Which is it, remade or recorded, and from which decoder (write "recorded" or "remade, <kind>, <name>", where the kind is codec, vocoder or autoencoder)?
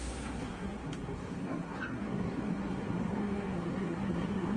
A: remade, codec, SNAC